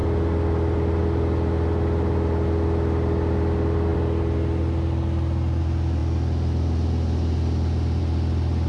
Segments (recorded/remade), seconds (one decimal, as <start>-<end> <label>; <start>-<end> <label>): 0.0-8.7 recorded